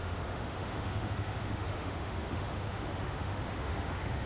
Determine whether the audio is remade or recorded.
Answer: remade